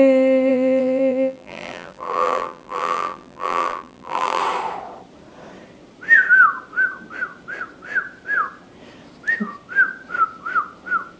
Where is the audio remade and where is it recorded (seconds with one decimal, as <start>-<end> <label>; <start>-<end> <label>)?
0.0-0.5 recorded; 0.5-4.4 remade; 4.4-11.2 recorded